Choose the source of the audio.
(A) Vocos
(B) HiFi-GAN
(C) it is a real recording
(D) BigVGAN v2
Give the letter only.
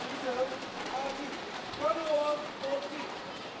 D